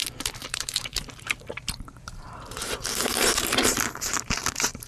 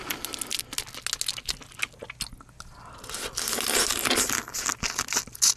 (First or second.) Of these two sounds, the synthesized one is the first